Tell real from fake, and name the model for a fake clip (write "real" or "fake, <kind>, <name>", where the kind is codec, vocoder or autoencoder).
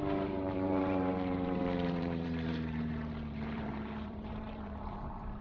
fake, vocoder, BigVGAN v2